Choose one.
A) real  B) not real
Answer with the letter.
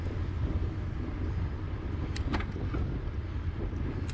A